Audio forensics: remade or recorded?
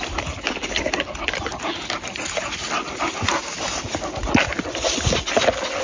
recorded